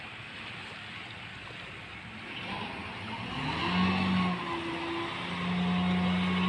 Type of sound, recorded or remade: recorded